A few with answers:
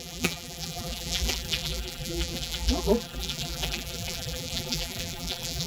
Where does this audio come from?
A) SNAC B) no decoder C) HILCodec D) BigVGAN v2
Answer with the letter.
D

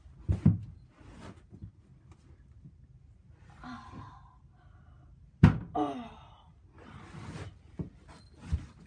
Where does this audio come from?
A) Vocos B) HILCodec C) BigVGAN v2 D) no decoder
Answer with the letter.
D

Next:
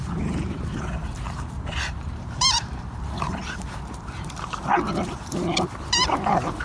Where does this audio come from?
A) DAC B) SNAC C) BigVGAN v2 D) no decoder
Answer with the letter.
C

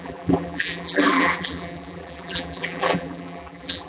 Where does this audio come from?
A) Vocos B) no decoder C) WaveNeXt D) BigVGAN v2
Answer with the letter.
D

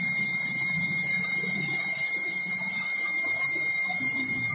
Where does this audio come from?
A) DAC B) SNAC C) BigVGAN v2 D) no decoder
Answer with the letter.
C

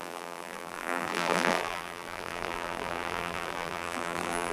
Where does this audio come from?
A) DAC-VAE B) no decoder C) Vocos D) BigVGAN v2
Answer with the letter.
D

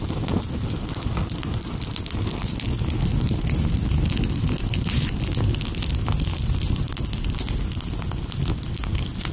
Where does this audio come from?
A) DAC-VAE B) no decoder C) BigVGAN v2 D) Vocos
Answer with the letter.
B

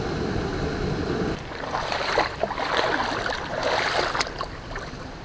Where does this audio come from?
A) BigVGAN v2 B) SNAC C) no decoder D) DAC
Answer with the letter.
A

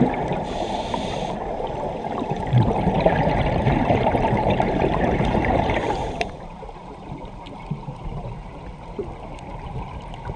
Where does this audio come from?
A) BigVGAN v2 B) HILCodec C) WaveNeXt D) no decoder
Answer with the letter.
A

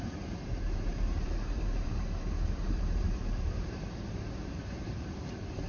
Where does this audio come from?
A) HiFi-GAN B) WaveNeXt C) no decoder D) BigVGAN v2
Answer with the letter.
D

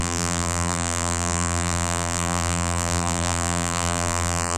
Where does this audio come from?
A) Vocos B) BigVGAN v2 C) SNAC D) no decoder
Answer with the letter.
B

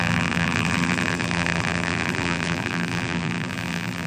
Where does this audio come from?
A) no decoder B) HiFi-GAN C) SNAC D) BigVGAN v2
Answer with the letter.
D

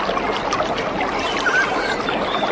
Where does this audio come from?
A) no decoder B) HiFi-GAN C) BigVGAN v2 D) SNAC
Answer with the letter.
A